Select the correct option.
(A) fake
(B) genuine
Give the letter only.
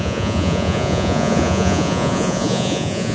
A